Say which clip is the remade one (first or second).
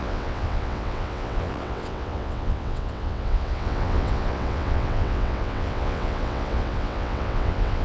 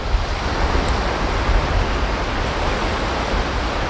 first